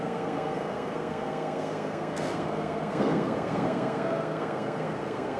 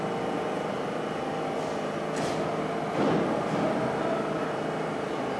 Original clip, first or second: second